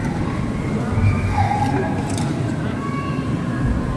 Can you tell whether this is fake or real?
real